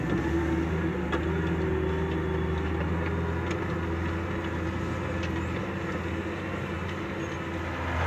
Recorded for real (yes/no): yes